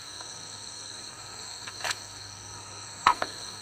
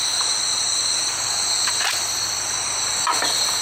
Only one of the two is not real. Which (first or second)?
first